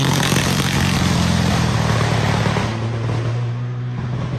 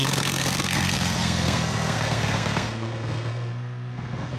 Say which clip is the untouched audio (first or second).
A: first